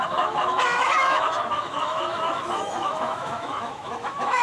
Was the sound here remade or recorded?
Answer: remade